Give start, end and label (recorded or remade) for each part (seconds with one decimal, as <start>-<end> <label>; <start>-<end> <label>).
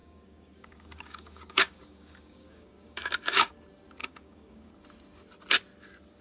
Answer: 0.0-3.5 remade; 3.5-4.0 recorded; 4.0-4.7 remade; 4.7-6.2 recorded